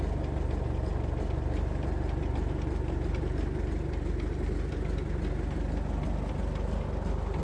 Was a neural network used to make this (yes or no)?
no